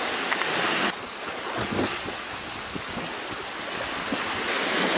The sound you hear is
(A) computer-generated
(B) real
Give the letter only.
B